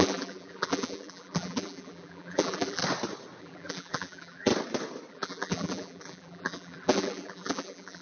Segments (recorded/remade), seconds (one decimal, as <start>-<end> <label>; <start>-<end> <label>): 0.0-2.8 remade; 2.8-3.4 recorded; 3.4-4.5 remade; 4.5-5.1 recorded; 5.1-8.0 remade